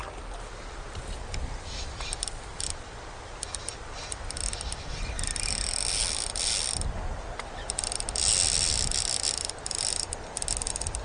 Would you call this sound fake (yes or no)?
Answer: no